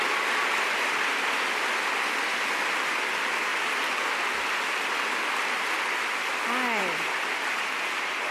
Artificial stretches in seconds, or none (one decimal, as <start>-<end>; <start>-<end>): none